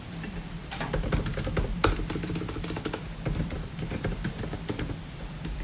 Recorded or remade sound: remade